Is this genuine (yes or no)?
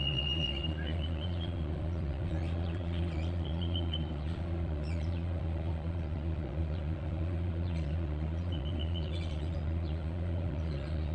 no